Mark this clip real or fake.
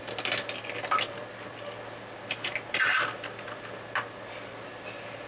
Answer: real